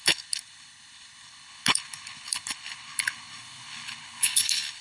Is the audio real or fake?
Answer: fake